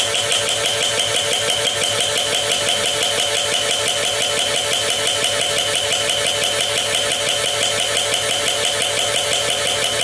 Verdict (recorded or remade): recorded